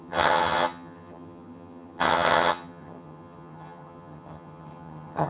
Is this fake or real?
fake